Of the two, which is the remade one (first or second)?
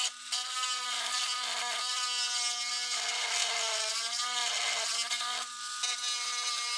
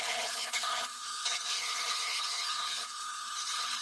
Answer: second